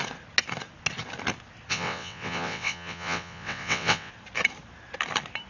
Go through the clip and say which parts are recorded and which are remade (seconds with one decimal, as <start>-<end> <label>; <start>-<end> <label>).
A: 0.0-1.7 recorded; 1.7-4.1 remade; 4.1-5.5 recorded